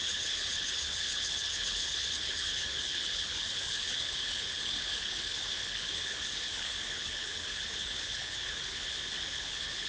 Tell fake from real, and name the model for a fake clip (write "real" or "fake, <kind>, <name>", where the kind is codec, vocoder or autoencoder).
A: fake, codec, HILCodec